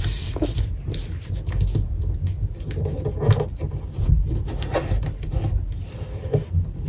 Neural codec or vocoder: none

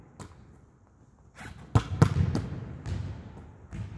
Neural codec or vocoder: none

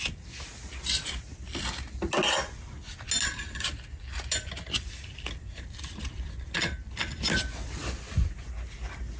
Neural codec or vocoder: none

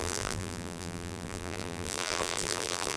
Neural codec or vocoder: vocoder, BigVGAN v2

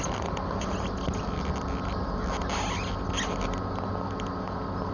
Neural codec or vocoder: none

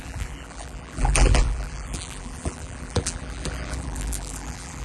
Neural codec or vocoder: vocoder, BigVGAN v2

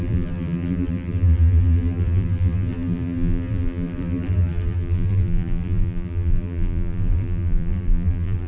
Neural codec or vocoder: vocoder, BigVGAN v2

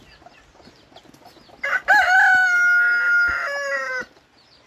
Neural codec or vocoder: none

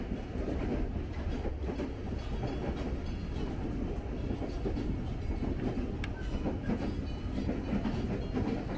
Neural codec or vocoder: none